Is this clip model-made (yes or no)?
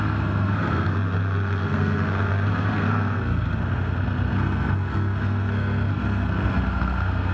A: yes